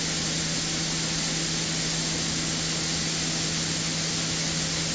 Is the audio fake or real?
real